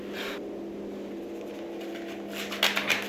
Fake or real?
real